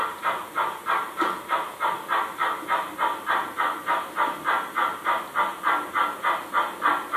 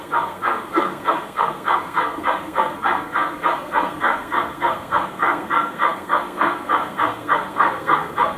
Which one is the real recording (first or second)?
first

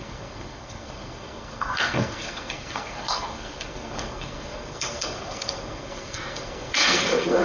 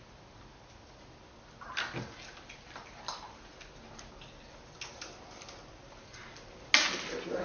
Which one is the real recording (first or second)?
second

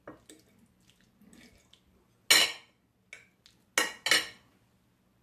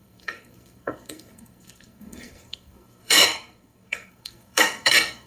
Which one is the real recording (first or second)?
first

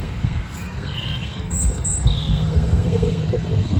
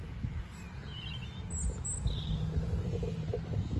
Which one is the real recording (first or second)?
second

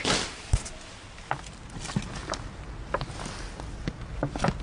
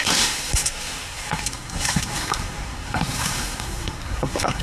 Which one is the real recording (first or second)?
first